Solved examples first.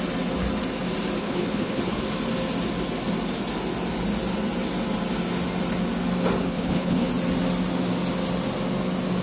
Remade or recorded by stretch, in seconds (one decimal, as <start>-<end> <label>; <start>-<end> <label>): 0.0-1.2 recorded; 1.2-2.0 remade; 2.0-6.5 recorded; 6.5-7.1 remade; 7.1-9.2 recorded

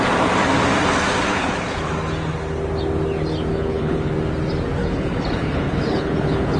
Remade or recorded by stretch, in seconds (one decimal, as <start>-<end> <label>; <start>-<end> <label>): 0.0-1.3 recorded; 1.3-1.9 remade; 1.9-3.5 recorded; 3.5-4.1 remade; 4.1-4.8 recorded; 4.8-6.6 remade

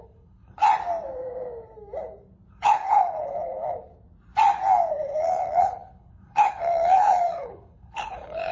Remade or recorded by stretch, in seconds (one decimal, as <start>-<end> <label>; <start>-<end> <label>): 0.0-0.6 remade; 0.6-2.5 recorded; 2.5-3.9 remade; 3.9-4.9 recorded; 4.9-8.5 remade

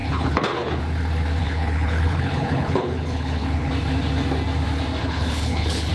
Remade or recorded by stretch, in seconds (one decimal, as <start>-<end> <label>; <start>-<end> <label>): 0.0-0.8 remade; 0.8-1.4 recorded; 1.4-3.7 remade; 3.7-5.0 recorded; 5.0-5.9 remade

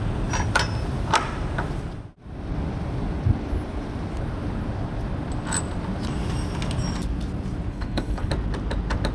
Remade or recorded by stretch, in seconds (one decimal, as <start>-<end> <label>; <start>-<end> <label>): 0.0-7.7 recorded; 7.7-8.3 remade; 8.3-9.1 recorded